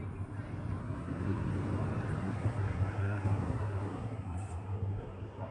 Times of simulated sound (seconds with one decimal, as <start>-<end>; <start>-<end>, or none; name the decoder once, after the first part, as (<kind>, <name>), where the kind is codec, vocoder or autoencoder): 0.8-1.5 (codec, SNAC); 2.2-5.5

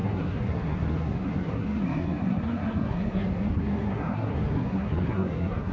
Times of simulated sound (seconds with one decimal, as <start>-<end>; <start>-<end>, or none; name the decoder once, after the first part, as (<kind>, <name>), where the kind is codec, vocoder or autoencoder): 0.0-5.7 (codec, SNAC)

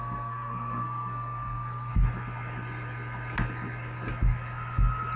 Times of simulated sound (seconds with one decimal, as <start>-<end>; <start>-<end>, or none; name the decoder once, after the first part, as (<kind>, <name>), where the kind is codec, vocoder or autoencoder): 0.0-1.9 (codec, SNAC)

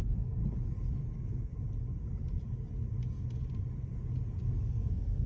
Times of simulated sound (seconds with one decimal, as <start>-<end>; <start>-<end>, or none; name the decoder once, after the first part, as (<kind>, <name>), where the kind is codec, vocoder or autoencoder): 0.0-0.4 (codec, SNAC); 1.0-1.5; 4.7-5.3

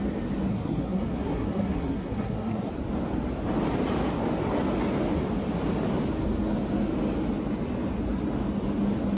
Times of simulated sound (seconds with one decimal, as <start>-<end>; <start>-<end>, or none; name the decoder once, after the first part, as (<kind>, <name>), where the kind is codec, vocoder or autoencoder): 0.5-2.7 (codec, SNAC)

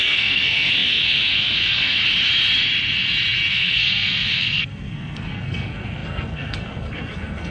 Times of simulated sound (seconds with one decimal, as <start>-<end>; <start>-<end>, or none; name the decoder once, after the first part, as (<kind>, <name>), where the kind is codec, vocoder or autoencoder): 0.0-2.0 (codec, SNAC); 3.5-7.5